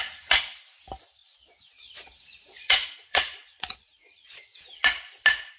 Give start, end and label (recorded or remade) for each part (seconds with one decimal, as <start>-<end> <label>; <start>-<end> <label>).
0.0-1.2 recorded; 1.2-4.6 remade; 4.6-5.6 recorded